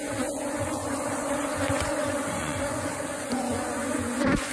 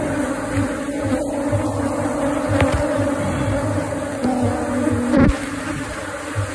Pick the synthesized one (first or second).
first